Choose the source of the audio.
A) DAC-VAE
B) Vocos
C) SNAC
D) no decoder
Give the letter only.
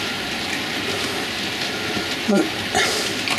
D